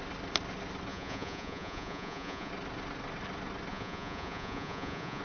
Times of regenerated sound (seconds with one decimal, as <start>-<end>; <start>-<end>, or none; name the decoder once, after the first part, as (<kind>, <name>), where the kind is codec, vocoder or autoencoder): 0.9-2.5 (vocoder, Vocos); 3.7-5.2